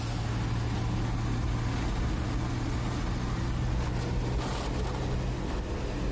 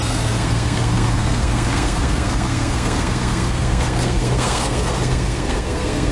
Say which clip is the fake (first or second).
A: second